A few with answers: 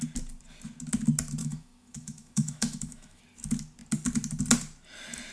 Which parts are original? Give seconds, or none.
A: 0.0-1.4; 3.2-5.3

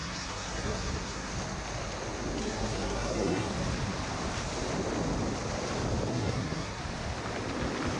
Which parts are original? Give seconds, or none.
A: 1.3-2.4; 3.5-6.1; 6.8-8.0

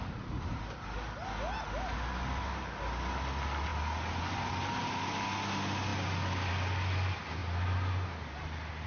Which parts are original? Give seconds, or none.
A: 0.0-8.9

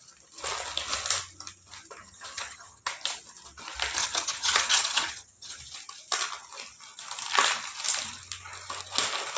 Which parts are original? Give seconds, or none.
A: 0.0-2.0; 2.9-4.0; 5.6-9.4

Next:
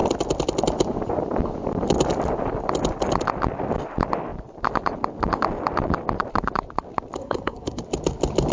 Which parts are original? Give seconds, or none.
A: 0.0-7.2; 7.8-8.5

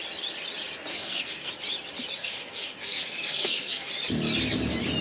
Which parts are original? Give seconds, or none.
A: 0.0-0.9; 1.5-2.2; 3.9-5.0

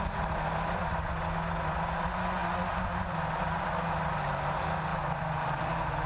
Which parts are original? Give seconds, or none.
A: 0.0-4.9; 5.6-6.1